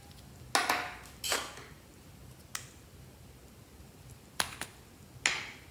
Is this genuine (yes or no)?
yes